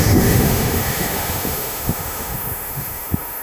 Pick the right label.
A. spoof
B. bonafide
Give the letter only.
A